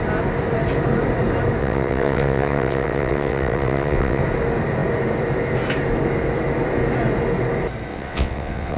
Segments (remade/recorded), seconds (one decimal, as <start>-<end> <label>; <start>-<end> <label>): 0.0-1.6 recorded; 1.6-4.2 remade; 4.2-7.9 recorded; 7.9-8.8 remade